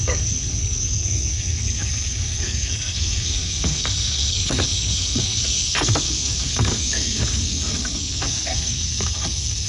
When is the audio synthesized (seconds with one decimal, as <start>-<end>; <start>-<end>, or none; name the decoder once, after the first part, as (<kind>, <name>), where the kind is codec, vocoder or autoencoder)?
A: 0.0-9.7 (codec, SNAC)